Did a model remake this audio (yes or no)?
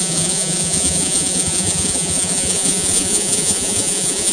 yes